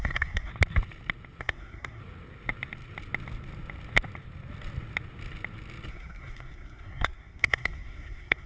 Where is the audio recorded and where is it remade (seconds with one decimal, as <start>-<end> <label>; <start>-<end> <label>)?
0.0-0.5 remade; 0.5-1.4 recorded; 1.4-2.0 remade; 2.0-5.9 recorded; 5.9-8.5 remade